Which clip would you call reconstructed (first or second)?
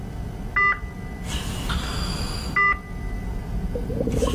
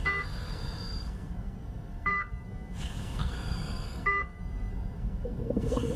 second